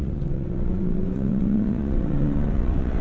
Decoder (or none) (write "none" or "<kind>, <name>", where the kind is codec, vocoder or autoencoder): vocoder, WaveNeXt